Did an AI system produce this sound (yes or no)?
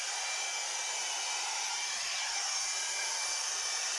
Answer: no